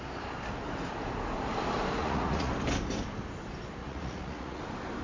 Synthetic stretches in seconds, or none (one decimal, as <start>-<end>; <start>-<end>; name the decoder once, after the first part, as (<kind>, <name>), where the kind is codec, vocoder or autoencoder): 2.0-2.5 (vocoder, Vocos); 3.8-4.6